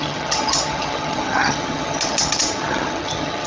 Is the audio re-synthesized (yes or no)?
yes